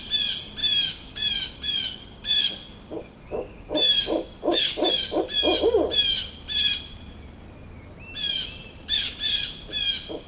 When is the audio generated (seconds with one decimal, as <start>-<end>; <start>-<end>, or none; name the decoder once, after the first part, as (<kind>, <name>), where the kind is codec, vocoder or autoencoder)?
0.6-5.2 (codec, DAC)